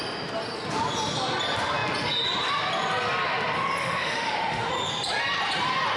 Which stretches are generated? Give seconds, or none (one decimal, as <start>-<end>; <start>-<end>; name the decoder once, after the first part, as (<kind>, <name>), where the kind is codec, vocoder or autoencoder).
3.8-4.7 (autoencoder, DAC-VAE)